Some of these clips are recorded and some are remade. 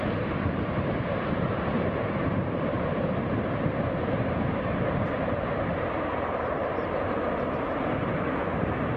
remade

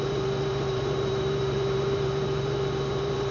remade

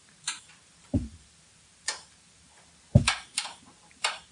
remade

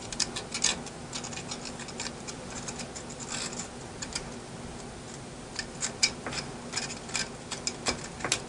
recorded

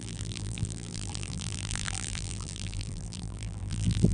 remade